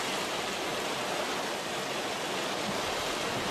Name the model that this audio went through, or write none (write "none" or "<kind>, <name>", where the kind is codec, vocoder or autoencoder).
none